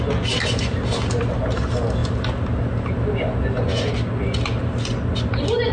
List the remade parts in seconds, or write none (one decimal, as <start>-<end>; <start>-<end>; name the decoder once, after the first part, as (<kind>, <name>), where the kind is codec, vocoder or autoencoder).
none